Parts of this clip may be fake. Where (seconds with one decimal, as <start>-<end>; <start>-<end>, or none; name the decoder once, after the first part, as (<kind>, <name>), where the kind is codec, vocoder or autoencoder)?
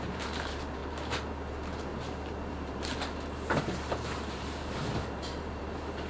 0.0-0.8 (vocoder, BigVGAN v2); 1.5-1.9; 2.5-2.9; 3.6-6.1